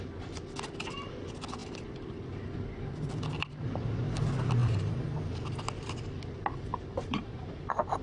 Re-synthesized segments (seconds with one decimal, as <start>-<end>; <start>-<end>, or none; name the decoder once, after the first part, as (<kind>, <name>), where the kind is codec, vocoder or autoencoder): 4.6-5.2 (vocoder, BigVGAN v2); 6.7-8.0